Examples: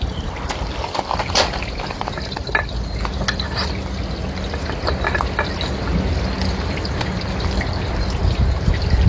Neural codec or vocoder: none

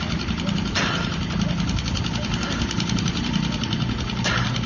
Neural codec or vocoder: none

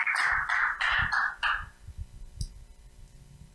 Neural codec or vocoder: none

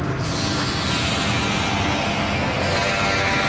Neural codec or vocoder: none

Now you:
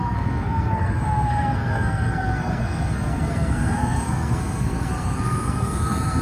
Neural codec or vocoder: codec, SNAC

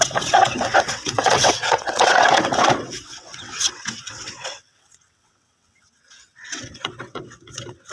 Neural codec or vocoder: vocoder, WaveNeXt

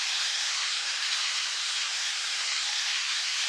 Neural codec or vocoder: codec, SNAC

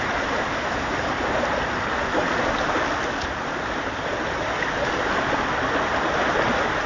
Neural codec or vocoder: none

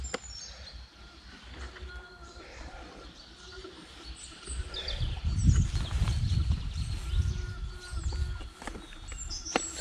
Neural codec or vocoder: none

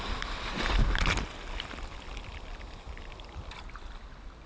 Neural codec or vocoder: none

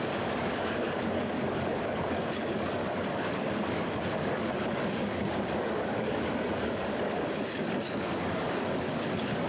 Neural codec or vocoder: codec, DAC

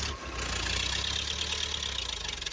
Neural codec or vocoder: none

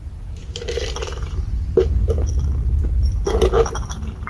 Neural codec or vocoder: vocoder, BigVGAN v2